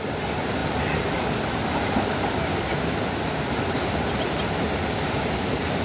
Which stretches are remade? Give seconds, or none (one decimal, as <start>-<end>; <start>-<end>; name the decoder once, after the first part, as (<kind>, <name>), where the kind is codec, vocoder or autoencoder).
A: none